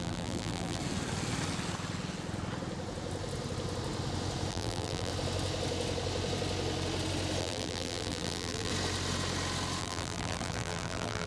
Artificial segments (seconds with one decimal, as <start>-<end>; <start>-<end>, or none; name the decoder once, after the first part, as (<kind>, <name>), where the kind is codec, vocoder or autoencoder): 0.0-0.8 (vocoder, BigVGAN v2); 4.5-5.1; 7.4-8.7; 9.8-11.3